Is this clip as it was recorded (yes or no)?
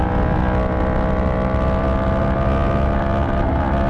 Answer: yes